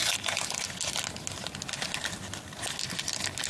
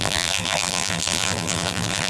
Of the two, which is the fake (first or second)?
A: second